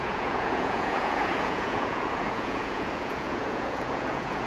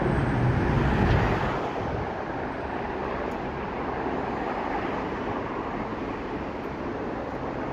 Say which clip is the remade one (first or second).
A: first